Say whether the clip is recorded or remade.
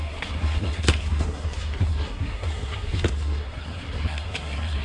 remade